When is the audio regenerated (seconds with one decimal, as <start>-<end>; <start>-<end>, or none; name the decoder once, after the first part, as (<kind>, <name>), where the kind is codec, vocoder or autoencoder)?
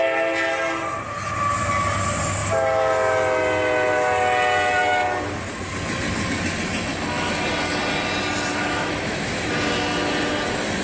8.5-9.5 (autoencoder, DAC-VAE)